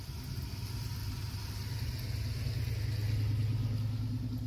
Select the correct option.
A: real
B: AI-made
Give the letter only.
A